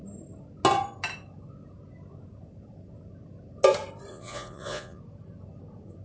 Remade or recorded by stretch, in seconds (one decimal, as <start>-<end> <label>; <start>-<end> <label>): 0.0-4.1 recorded; 4.1-5.0 remade; 5.0-6.0 recorded